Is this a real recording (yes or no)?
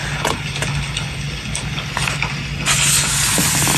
yes